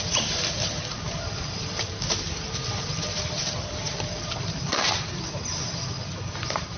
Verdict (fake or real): fake